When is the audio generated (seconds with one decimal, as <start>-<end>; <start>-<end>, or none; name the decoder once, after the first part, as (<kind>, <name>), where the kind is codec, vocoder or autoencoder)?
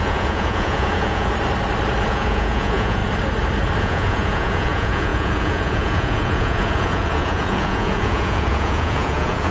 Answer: 0.0-1.3 (vocoder, Vocos); 2.1-3.0; 3.8-9.5